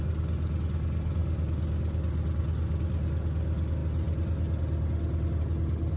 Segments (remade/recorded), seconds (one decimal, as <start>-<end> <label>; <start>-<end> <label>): 0.0-6.0 recorded